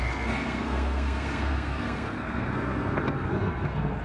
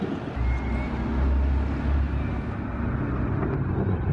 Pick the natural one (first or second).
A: second